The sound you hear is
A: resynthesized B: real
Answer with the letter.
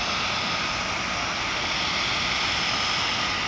B